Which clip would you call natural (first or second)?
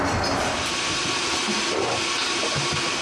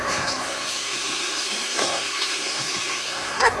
first